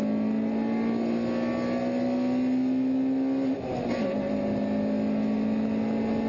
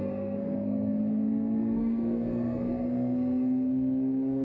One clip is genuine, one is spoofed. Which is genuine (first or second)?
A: first